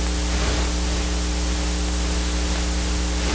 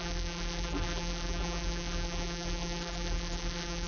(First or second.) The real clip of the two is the first